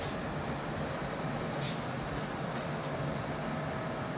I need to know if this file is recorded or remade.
recorded